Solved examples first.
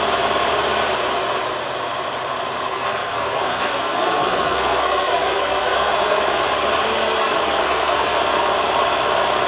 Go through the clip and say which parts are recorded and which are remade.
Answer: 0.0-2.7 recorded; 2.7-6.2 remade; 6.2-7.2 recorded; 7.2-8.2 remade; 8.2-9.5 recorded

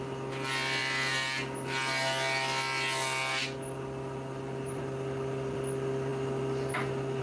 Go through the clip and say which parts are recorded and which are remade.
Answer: 0.0-7.2 recorded